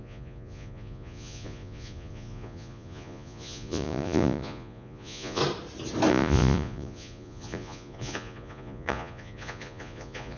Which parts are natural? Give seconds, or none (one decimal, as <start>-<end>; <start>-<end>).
5.4-6.1